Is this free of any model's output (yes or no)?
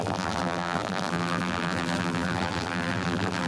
no